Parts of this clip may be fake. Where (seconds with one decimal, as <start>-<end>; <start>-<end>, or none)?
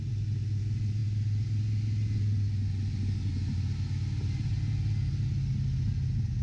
none